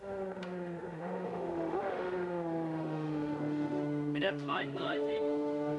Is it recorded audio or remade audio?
remade